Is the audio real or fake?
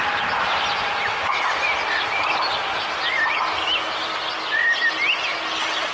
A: real